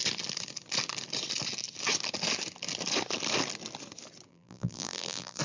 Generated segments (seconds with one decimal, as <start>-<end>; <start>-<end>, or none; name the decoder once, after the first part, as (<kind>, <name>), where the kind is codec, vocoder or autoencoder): 4.3-5.4 (vocoder, BigVGAN v2)